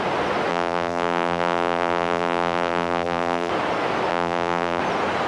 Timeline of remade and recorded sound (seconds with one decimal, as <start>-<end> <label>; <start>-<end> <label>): 0.0-0.5 recorded; 0.5-3.5 remade; 3.5-4.1 recorded; 4.1-4.8 remade; 4.8-5.3 recorded